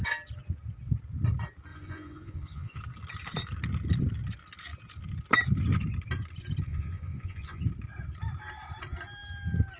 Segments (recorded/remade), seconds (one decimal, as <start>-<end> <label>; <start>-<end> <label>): 0.0-1.7 recorded; 1.7-2.8 remade; 2.8-6.7 recorded; 6.7-7.6 remade; 7.6-9.8 recorded